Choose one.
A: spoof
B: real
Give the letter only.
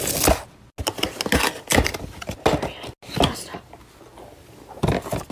B